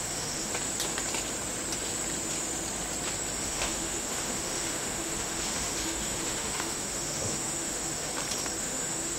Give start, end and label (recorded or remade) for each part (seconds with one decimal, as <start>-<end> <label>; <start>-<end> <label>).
0.0-0.5 remade; 0.5-3.4 recorded; 3.4-8.1 remade; 8.1-8.6 recorded; 8.6-9.2 remade